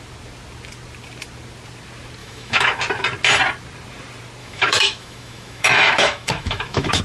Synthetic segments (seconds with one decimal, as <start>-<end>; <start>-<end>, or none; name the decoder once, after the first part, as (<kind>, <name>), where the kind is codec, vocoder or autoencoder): 2.2-2.8 (autoencoder, DAC-VAE); 4.4-7.0